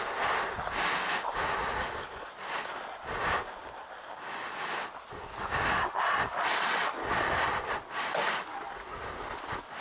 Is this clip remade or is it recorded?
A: recorded